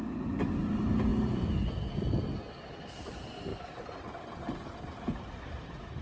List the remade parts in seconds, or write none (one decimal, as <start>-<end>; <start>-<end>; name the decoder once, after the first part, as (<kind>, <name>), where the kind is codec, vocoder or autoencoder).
none